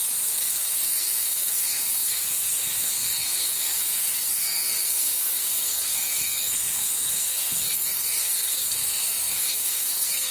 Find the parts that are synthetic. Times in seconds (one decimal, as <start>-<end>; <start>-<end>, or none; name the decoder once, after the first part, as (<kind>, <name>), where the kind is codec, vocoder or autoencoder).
0.0-10.3 (codec, SNAC)